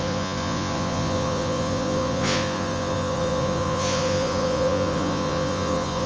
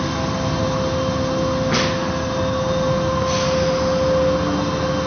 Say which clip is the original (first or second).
second